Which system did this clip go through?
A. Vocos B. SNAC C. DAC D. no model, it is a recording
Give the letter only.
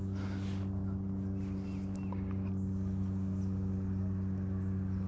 D